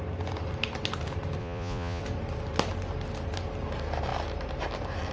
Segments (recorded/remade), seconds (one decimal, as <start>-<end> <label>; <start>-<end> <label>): 0.0-1.4 recorded; 1.4-2.0 remade; 2.0-5.1 recorded